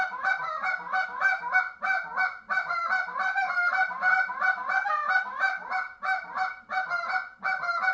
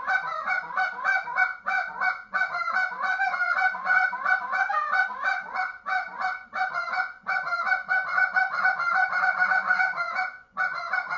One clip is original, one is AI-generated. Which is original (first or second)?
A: first